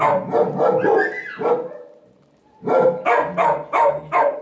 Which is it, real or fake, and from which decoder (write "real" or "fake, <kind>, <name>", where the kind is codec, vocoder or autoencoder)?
real